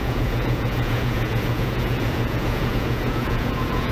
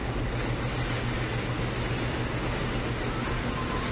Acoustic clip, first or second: second